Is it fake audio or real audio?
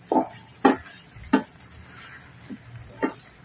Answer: real